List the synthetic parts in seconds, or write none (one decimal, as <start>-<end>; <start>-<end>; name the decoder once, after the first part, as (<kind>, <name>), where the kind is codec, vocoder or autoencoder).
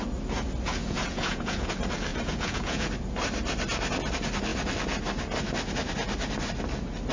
0.8-1.7 (vocoder, Vocos); 2.1-2.9